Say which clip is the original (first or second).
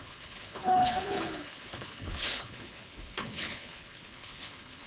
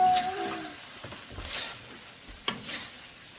second